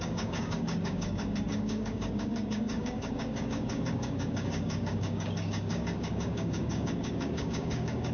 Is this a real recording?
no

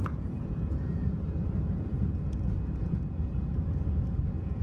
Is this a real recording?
no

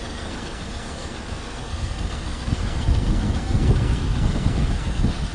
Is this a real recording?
no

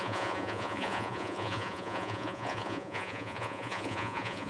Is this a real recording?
no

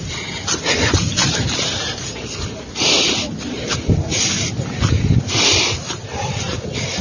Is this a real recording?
yes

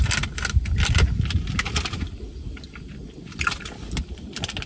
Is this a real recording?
yes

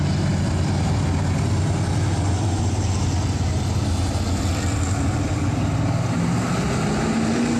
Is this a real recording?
yes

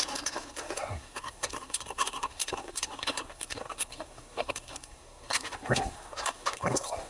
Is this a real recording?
no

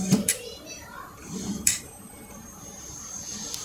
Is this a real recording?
no